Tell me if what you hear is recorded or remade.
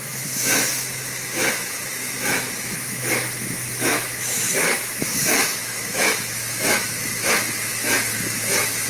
remade